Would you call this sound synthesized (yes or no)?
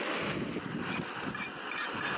no